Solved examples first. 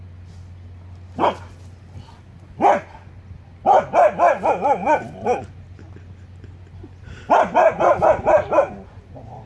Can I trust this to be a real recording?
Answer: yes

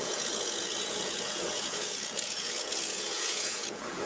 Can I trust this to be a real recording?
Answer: no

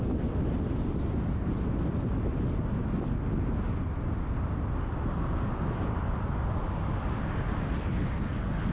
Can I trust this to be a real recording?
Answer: yes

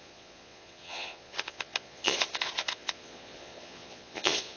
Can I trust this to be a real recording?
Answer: no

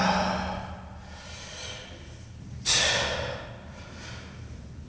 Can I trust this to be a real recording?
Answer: yes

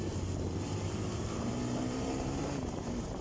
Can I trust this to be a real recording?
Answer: no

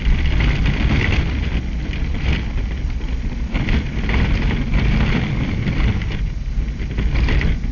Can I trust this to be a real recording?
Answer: yes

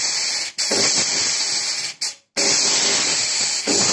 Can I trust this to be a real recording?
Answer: yes